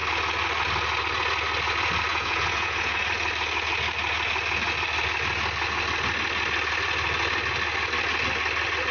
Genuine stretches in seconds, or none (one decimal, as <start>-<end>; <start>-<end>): 0.0-2.1; 3.1-8.9